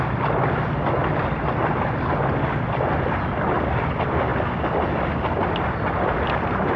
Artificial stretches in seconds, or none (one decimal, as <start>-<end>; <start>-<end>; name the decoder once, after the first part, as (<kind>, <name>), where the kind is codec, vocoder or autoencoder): none

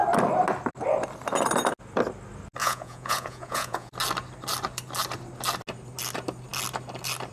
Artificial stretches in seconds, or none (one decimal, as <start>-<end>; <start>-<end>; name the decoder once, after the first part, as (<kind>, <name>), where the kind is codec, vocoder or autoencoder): 2.6-3.9 (vocoder, Vocos)